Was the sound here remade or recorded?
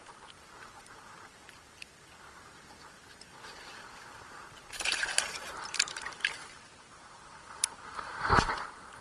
remade